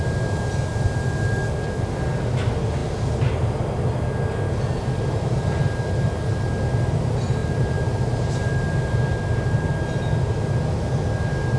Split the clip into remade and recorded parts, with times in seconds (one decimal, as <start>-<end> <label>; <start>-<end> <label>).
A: 0.0-7.4 recorded; 7.4-9.6 remade; 9.6-11.6 recorded